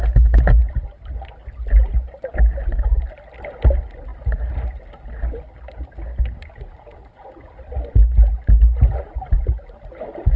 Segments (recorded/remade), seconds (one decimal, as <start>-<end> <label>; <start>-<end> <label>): 0.0-0.6 recorded; 0.6-1.4 remade; 1.4-10.4 recorded